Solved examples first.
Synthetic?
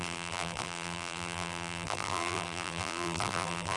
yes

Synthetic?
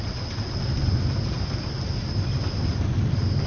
no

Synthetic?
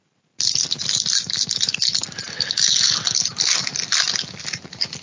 no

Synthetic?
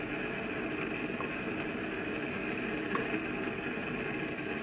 no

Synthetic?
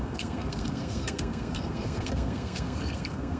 yes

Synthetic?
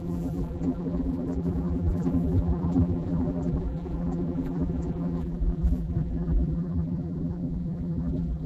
yes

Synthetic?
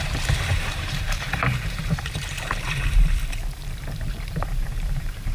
yes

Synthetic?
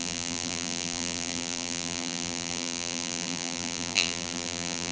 yes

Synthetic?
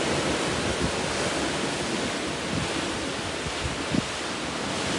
no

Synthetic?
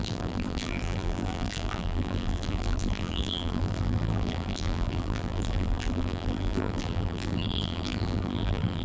yes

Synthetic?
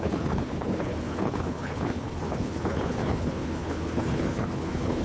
yes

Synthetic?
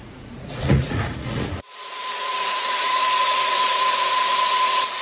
yes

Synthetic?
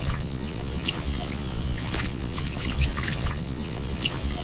yes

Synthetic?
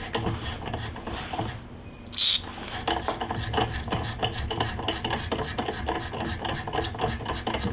no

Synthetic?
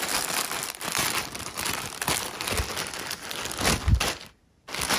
no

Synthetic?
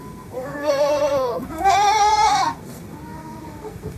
yes